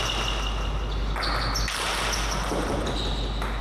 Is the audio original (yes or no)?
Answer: yes